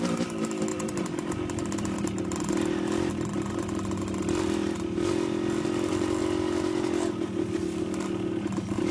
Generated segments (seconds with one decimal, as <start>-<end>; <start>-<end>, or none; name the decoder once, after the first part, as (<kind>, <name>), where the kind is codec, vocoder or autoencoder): 0.7-3.1 (vocoder, BigVGAN v2)